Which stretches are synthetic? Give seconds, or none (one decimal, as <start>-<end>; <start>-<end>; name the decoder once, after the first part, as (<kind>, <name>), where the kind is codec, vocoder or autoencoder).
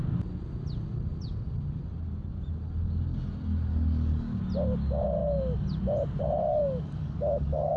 3.7-4.4 (codec, DAC); 6.4-7.8